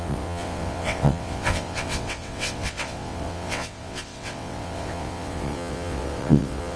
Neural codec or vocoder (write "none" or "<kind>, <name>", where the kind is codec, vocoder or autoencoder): vocoder, WaveNeXt